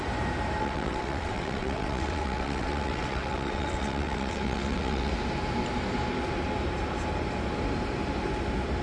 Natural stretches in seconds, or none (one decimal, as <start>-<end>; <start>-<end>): 0.0-0.6; 5.1-8.8